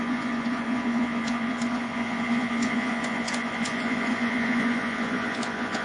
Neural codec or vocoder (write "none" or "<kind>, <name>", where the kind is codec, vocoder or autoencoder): vocoder, Vocos